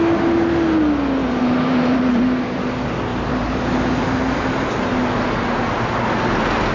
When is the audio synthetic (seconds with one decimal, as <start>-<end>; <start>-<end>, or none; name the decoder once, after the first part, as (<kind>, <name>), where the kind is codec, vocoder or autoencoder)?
1.2-2.2 (vocoder, BigVGAN v2); 3.1-4.7